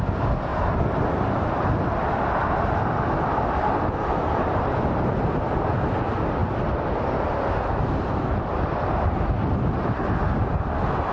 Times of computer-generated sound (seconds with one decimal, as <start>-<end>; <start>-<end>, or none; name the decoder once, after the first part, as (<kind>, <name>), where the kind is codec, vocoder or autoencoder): 0.5-1.8 (vocoder, BigVGAN v2)